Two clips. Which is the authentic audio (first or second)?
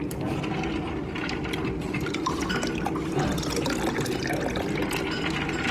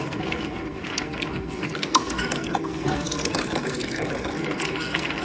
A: first